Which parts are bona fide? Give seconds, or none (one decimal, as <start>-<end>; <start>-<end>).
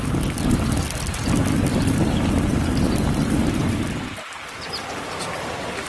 0.0-1.7; 3.8-5.9